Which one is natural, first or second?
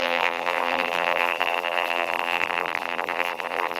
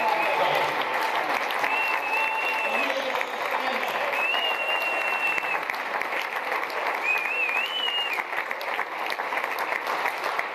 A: second